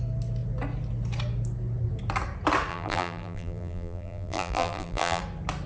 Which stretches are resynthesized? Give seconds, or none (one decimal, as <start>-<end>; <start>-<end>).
2.7-5.2